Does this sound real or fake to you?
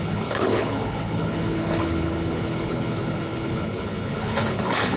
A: fake